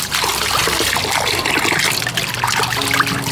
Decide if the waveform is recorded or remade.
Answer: recorded